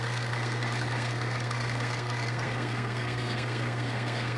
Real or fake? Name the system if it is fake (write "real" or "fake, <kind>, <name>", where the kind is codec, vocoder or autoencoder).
fake, codec, SNAC